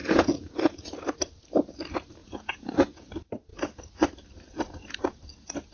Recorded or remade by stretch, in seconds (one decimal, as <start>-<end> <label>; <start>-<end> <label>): 0.0-0.8 remade; 0.8-2.2 recorded; 2.2-3.1 remade; 3.1-5.7 recorded